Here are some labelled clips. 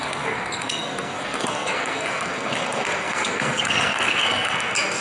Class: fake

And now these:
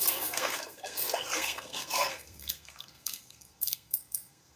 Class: fake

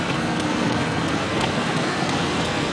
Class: fake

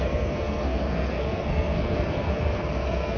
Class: fake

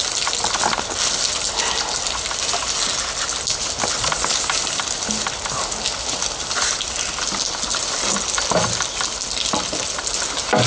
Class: real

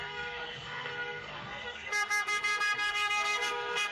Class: fake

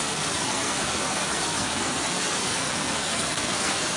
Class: fake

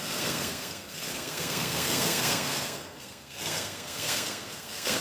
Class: fake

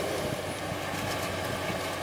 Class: real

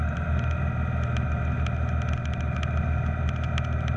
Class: real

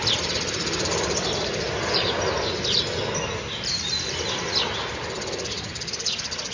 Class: real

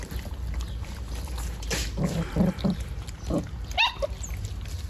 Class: real